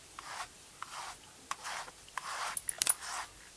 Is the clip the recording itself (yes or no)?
yes